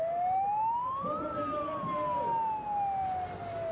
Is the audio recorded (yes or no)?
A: yes